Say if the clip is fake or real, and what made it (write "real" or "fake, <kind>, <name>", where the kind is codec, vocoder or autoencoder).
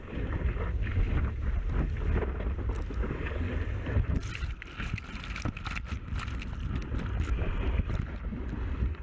real